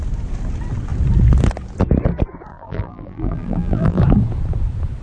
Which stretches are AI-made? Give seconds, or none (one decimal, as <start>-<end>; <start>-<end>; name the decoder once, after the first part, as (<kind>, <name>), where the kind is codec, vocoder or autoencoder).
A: 2.5-4.0 (vocoder, BigVGAN v2)

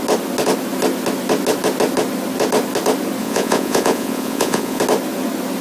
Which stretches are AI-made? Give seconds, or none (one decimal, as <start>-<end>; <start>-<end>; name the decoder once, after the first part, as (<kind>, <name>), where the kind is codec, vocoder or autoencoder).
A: 3.2-4.8 (vocoder, Vocos)